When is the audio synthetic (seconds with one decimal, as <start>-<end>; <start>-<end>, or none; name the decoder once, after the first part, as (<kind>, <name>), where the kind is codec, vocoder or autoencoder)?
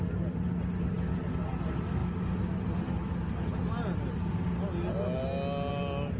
none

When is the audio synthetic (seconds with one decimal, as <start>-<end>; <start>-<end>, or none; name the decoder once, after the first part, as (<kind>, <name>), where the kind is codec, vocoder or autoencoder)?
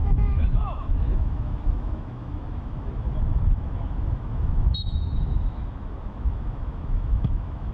0.0-7.7 (autoencoder, DAC-VAE)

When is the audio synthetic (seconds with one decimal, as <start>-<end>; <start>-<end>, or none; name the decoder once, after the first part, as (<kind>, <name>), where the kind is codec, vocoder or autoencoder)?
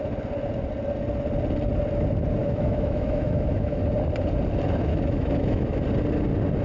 2.4-3.8 (autoencoder, DAC-VAE); 4.9-5.8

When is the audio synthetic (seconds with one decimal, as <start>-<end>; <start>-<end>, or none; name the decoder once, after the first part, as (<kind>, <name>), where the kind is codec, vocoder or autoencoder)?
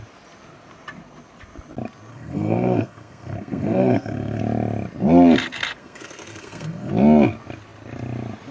2.1-4.4 (codec, SNAC); 5.8-6.9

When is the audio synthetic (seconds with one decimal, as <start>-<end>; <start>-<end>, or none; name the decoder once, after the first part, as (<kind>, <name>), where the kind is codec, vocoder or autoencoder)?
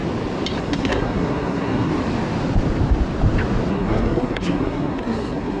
0.6-1.9 (codec, SNAC); 3.7-5.6